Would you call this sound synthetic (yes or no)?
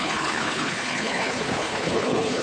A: yes